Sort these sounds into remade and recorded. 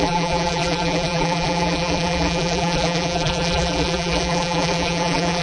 remade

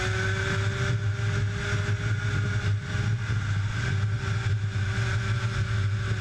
recorded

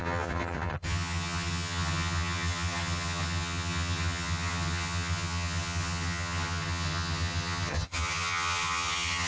remade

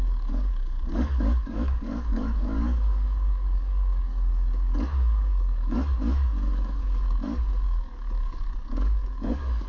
remade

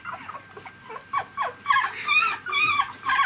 recorded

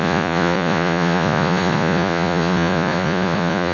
remade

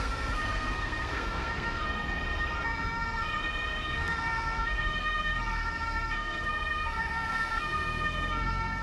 remade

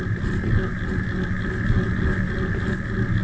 recorded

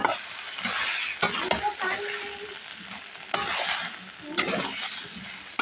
recorded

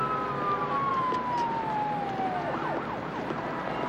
recorded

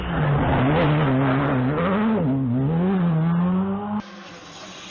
recorded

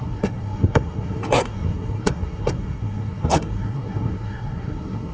remade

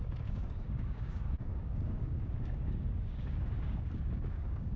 remade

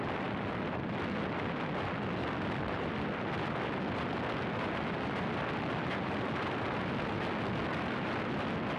recorded